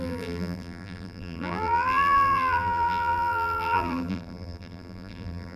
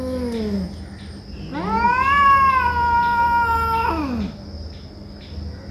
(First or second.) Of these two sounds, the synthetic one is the first